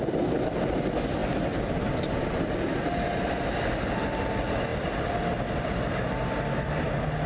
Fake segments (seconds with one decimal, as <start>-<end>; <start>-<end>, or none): none

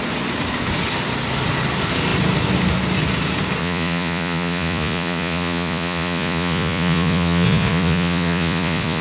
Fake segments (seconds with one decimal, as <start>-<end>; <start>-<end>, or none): 3.6-9.0

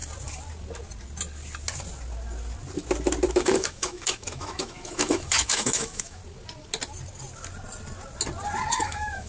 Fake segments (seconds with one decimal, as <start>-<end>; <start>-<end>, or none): 3.3-6.2; 8.7-9.3

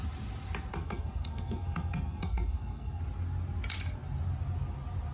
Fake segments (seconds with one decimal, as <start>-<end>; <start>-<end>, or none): 0.7-3.0

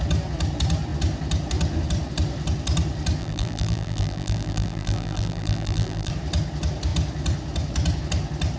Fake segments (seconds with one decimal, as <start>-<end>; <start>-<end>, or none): 3.2-6.1

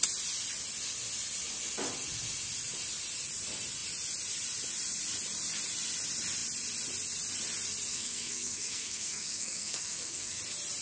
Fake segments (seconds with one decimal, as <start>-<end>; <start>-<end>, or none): 7.9-10.4

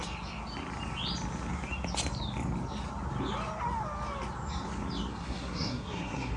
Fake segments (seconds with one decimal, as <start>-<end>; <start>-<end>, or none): 5.1-6.4